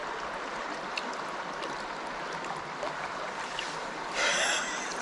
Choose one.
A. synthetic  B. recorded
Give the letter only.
B